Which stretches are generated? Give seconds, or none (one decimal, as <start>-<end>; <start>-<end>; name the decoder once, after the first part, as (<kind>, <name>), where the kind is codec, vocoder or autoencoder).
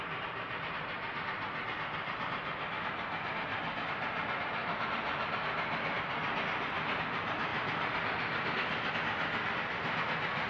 7.5-8.9 (vocoder, BigVGAN v2)